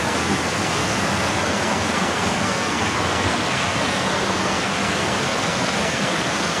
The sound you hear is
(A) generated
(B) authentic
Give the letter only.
A